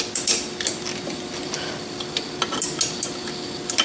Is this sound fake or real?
real